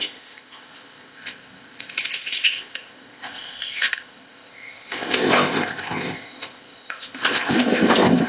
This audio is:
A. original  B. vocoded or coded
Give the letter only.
B